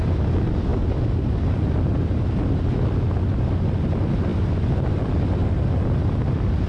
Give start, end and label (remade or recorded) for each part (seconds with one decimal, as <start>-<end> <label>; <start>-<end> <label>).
0.0-6.7 recorded